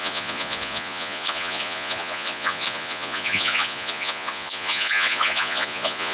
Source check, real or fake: fake